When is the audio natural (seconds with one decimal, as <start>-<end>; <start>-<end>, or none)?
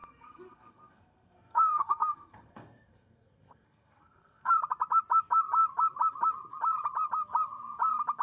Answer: 4.5-8.2